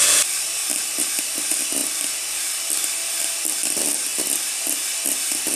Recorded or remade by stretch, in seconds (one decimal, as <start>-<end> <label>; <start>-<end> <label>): 0.0-0.6 remade; 0.6-1.2 recorded; 1.2-1.8 remade; 1.8-3.4 recorded; 3.4-4.1 remade; 4.1-5.6 recorded